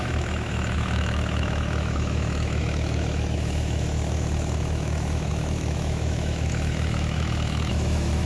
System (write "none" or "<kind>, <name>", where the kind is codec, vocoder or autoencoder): autoencoder, DAC-VAE